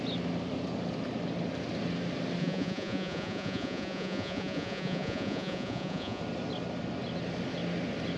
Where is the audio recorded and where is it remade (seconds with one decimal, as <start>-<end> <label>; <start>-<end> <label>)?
0.0-2.4 recorded; 2.4-6.2 remade; 6.2-8.2 recorded